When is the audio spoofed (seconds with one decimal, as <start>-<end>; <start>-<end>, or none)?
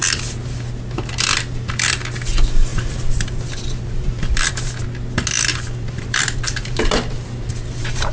2.7-4.5; 5.5-7.5